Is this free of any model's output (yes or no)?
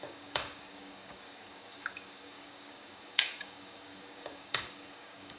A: no